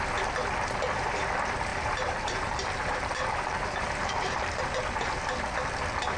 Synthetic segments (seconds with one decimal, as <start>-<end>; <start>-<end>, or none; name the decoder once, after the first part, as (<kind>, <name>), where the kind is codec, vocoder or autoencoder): 1.7-4.8 (vocoder, BigVGAN v2)